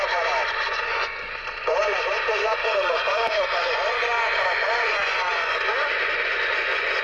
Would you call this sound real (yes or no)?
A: no